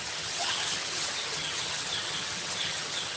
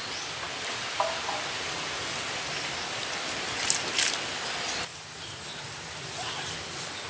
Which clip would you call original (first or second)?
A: second